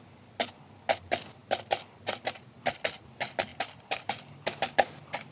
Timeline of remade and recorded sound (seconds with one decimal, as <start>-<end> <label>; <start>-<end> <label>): 0.0-5.3 recorded